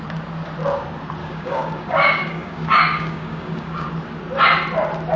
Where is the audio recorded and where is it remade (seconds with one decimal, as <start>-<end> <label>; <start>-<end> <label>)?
0.0-1.2 recorded; 1.2-3.9 remade; 3.9-5.2 recorded